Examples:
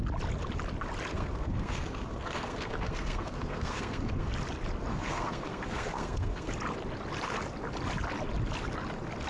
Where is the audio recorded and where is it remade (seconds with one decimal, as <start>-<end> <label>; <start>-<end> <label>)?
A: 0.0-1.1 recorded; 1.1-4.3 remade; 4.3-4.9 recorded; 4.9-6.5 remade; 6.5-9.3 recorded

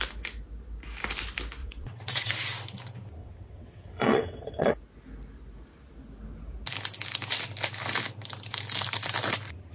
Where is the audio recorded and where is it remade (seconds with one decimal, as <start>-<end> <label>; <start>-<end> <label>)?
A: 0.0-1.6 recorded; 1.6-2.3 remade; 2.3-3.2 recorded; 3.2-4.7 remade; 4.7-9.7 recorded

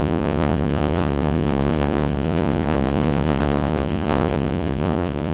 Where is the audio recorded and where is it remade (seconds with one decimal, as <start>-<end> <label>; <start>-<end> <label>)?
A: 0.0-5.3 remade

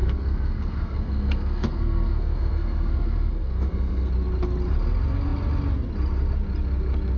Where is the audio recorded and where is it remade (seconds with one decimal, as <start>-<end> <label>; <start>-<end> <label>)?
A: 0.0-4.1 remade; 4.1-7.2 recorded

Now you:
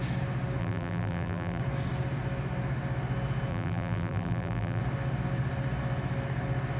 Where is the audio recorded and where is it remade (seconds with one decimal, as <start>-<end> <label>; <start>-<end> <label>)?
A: 0.0-0.6 recorded; 0.6-1.6 remade; 1.6-3.5 recorded; 3.5-4.8 remade; 4.8-6.8 recorded

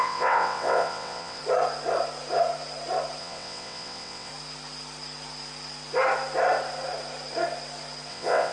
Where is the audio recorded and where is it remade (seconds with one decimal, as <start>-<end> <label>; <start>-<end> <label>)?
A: 0.0-1.4 remade; 1.4-3.2 recorded; 3.2-4.3 remade; 4.3-8.1 recorded; 8.1-8.5 remade

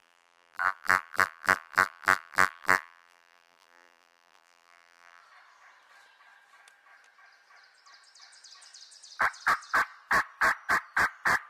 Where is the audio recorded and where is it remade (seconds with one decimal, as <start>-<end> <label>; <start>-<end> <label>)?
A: 0.0-5.2 remade; 5.2-11.5 recorded